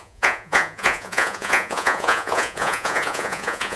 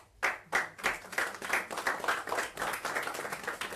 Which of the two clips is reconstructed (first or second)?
first